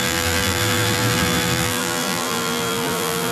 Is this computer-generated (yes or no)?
yes